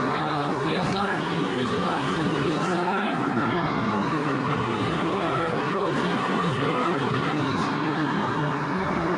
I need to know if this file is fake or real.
fake